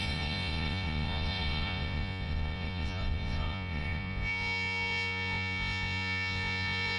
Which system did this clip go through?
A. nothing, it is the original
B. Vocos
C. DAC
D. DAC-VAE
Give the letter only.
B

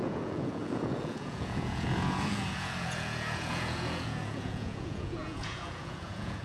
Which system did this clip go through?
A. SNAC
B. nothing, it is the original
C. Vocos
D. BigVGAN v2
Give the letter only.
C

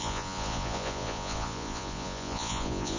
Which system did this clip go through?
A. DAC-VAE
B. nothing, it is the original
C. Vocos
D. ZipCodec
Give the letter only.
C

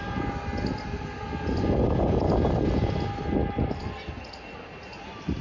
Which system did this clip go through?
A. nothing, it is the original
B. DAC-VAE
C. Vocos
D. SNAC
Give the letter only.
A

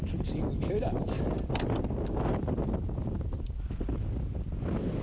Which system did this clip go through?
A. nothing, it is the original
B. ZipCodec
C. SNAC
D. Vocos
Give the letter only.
A